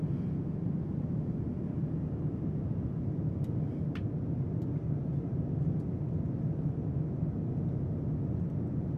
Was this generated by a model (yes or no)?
no